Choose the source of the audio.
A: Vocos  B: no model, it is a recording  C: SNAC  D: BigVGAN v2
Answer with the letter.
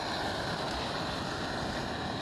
B